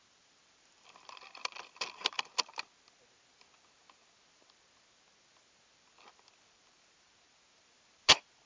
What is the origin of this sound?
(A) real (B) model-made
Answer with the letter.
A